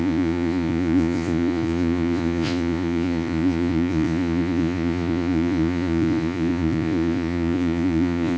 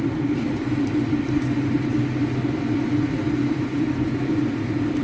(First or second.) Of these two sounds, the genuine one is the second